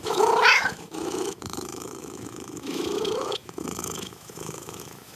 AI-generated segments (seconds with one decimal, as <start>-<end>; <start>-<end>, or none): 0.0-5.2